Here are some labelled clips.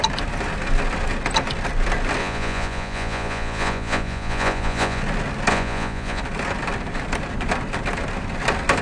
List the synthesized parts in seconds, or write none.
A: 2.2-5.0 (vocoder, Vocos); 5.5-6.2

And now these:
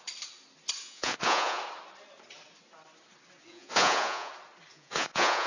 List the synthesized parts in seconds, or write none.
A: 0.8-1.6 (vocoder, Vocos); 3.5-4.3; 4.7-5.5

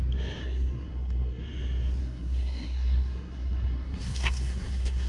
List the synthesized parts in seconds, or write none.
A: 0.4-1.4 (codec, SNAC); 2.0-5.1

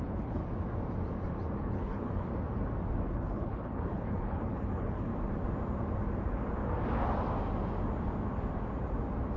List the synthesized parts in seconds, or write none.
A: 0.0-0.4 (codec, HILCodec); 1.6-2.3; 3.1-5.1